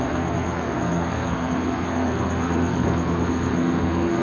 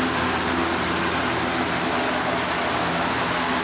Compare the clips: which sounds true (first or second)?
second